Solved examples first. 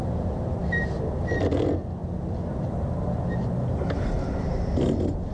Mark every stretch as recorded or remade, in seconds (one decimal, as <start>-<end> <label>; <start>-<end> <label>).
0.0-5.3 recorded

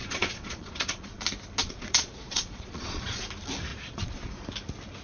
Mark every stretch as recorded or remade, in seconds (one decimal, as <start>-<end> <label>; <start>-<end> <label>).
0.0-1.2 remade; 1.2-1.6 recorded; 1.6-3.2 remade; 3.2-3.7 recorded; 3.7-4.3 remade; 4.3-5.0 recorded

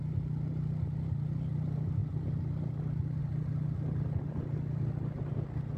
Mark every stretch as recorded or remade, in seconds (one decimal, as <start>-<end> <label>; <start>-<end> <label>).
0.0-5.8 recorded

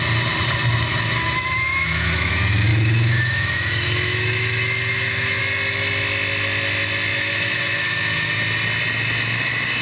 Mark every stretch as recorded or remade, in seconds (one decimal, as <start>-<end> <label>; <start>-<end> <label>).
0.0-0.9 recorded; 0.9-2.3 remade; 2.3-2.7 recorded; 2.7-5.4 remade; 5.4-7.1 recorded; 7.1-8.3 remade; 8.3-9.8 recorded

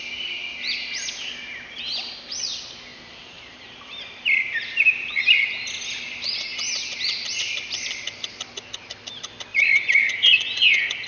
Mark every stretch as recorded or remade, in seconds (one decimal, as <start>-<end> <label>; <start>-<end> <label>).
0.0-2.9 recorded; 2.9-3.8 remade; 3.8-9.5 recorded; 9.5-10.4 remade; 10.4-11.1 recorded

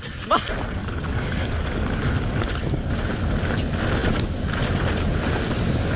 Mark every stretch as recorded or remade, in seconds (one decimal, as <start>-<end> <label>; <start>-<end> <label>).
0.0-0.8 recorded; 0.8-2.5 remade; 2.5-6.0 recorded